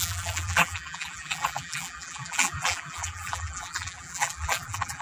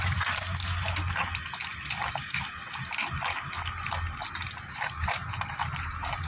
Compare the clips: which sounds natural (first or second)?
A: second